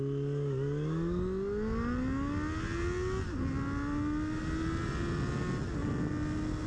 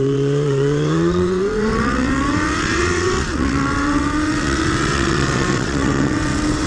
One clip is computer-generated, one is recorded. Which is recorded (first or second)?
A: first